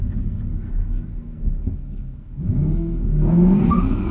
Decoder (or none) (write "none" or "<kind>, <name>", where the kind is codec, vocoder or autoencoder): codec, SNAC